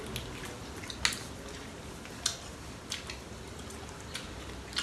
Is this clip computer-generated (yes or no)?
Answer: no